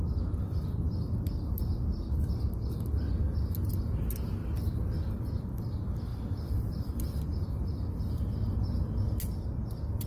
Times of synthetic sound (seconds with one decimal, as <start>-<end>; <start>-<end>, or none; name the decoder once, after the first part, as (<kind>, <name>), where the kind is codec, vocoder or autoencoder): none